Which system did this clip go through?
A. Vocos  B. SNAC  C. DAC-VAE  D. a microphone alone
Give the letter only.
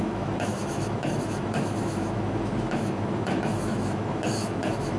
C